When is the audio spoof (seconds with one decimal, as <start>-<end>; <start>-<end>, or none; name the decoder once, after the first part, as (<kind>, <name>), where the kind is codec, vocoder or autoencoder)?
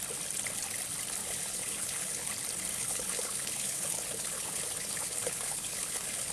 1.2-2.3 (codec, HILCodec); 2.7-6.3